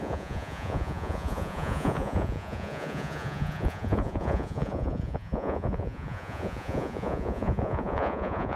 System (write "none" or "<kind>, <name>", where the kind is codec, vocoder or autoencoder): vocoder, Vocos